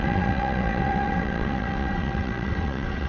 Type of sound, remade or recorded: remade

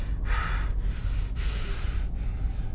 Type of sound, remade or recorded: recorded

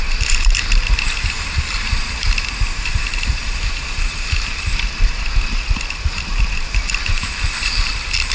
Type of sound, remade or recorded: remade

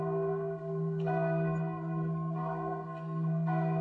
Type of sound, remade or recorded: remade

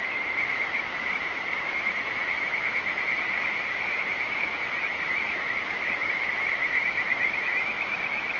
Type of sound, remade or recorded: remade